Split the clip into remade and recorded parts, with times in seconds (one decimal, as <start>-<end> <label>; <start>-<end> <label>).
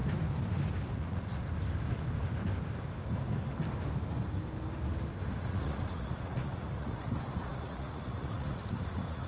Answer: 0.0-0.9 recorded; 0.9-1.3 remade; 1.3-5.4 recorded; 5.4-9.3 remade